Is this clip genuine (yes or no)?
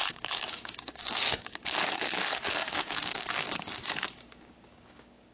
no